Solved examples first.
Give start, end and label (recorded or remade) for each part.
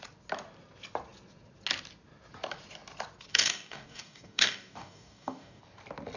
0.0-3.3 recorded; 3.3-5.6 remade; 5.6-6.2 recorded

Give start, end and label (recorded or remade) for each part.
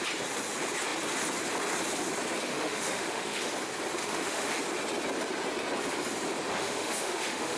0.0-2.5 recorded; 2.5-3.5 remade; 3.5-4.0 recorded; 4.0-4.6 remade; 4.6-6.5 recorded; 6.5-7.6 remade